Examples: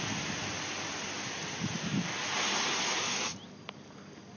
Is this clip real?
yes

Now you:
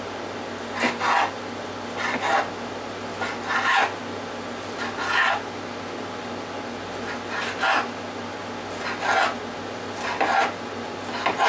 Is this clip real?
yes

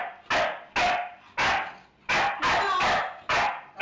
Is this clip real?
yes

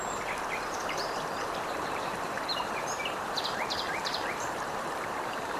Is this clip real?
no